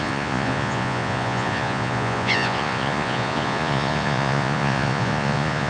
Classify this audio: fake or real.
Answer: fake